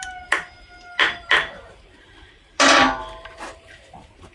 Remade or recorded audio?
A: remade